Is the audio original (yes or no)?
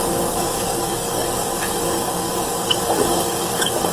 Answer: no